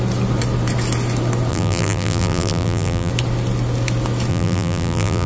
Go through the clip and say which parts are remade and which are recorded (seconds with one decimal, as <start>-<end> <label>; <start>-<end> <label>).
0.0-1.5 recorded; 1.5-3.1 remade; 3.1-4.3 recorded; 4.3-5.3 remade